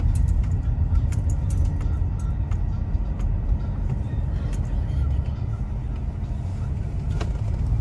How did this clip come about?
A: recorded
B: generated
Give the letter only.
A